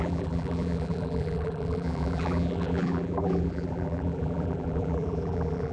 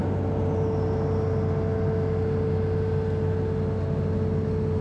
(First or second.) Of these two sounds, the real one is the second